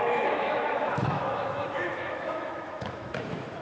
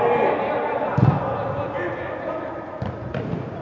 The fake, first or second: first